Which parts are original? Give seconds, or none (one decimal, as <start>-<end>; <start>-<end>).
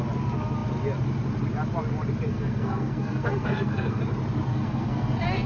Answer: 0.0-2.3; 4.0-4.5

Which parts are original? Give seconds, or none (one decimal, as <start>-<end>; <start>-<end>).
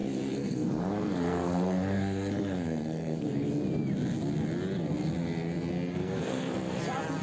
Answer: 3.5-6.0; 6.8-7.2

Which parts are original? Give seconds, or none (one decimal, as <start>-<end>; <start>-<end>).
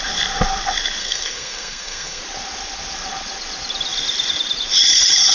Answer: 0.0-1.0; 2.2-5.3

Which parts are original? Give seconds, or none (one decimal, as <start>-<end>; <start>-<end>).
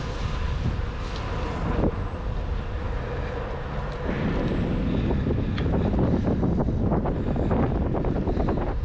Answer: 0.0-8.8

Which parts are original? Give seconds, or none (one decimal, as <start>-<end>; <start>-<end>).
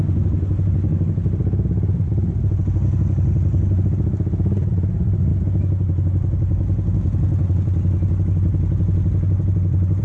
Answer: 0.0-10.0